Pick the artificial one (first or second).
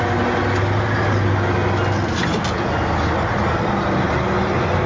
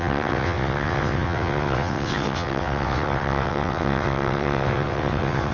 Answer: second